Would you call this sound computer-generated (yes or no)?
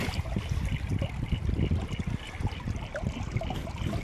no